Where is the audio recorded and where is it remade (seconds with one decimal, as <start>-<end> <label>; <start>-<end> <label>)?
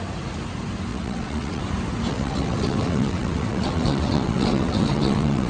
0.0-0.9 recorded; 0.9-1.6 remade; 1.6-2.1 recorded; 2.1-5.5 remade